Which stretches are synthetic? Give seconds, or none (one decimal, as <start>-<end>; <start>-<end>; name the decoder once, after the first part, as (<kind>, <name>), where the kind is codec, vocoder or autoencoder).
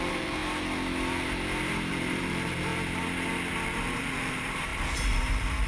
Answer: 0.0-0.4 (vocoder, BigVGAN v2); 1.9-2.7; 3.7-5.7